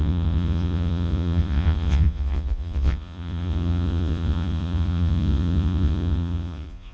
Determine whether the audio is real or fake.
fake